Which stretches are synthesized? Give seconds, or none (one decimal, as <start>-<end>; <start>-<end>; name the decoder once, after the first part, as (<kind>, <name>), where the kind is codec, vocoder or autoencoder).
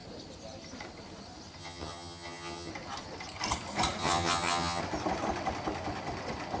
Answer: 1.6-2.7 (vocoder, HiFi-GAN); 4.0-4.8